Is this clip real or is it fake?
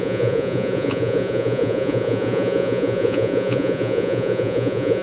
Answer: fake